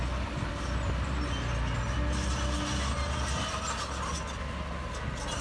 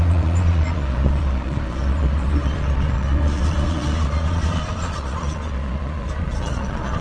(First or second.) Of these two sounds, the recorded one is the first